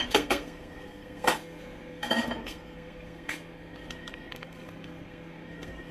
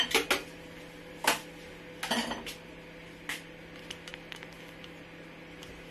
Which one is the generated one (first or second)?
first